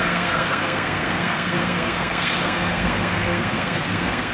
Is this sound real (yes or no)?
no